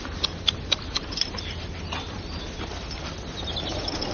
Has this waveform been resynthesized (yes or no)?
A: yes